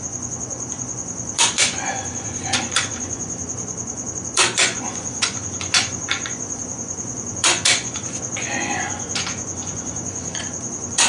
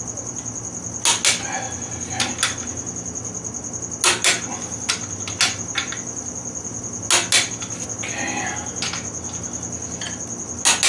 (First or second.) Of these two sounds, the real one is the second